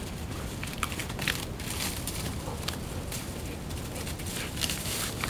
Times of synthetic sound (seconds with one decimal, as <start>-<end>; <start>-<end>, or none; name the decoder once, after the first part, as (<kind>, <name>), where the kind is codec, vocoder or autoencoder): none